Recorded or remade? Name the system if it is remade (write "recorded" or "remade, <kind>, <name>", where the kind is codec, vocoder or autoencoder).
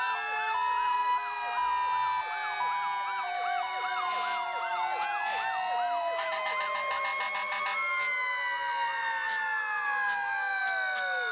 recorded